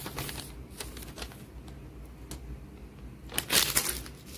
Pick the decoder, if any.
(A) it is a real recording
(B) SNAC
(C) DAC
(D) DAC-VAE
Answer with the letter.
A